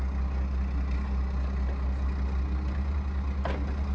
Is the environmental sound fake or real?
real